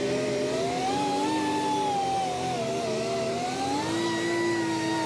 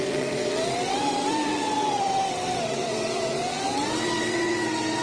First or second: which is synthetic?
second